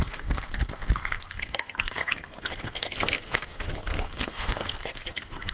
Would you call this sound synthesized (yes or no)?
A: yes